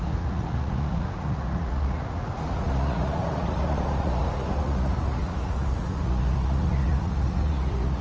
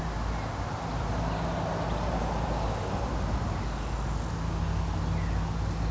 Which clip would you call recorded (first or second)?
second